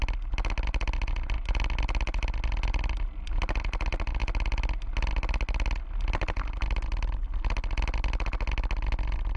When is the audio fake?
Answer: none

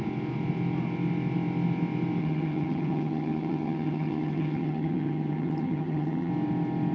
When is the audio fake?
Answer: 2.2-6.3 (vocoder, HiFi-GAN)

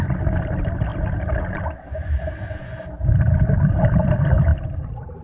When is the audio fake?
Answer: none

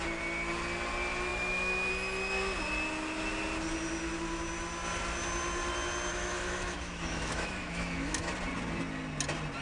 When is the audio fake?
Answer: 1.3-1.9 (autoencoder, DAC-VAE); 6.1-8.3